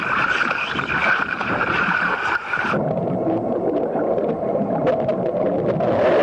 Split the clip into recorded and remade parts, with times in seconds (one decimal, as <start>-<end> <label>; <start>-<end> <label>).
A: 0.0-1.0 recorded; 1.0-4.7 remade; 4.7-6.2 recorded